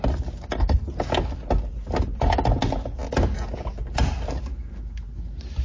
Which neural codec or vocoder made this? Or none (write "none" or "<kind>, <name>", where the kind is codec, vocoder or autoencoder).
none